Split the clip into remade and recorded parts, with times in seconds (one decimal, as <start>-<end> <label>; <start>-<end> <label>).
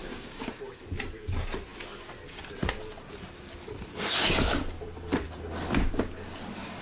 0.0-0.6 remade; 0.6-6.8 recorded